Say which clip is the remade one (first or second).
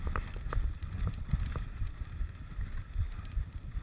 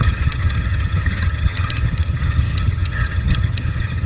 second